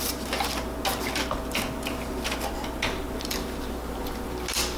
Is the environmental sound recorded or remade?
recorded